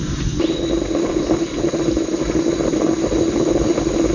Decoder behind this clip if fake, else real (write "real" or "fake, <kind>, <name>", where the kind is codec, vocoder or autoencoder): real